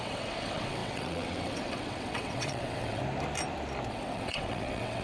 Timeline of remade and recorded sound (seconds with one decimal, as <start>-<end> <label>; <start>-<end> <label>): 0.0-3.0 remade; 3.0-3.9 recorded; 3.9-5.0 remade